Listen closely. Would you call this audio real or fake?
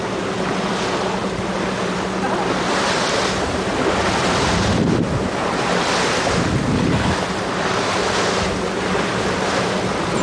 real